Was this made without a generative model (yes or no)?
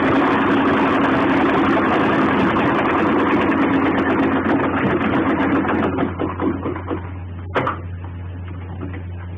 yes